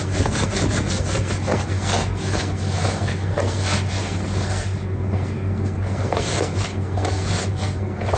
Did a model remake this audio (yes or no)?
yes